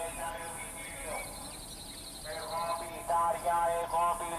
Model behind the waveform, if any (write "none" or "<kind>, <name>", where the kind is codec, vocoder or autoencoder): none